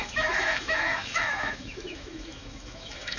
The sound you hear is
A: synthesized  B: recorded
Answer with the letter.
A